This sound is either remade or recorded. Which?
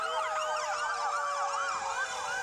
recorded